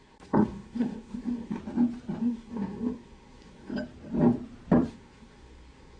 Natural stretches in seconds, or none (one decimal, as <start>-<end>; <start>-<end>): 1.6-2.2; 3.7-4.9